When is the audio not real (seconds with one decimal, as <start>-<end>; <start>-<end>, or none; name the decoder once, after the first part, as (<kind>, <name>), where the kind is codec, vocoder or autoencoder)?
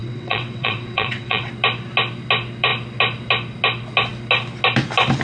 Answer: 0.0-1.5 (vocoder, WaveNeXt)